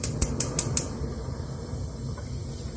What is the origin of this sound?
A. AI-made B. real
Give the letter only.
B